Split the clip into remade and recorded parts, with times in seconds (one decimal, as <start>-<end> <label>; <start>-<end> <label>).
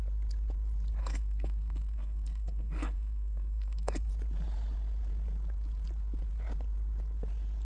0.0-1.0 recorded; 1.0-4.1 remade; 4.1-7.6 recorded